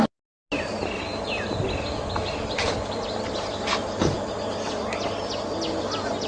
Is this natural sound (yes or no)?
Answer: yes